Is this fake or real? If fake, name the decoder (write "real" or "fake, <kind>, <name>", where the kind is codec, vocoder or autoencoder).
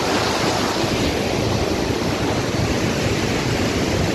real